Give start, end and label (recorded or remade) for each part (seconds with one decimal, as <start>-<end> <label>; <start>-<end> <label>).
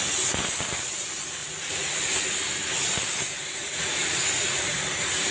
0.0-1.4 recorded; 1.4-2.0 remade; 2.0-3.6 recorded; 3.6-4.6 remade; 4.6-5.3 recorded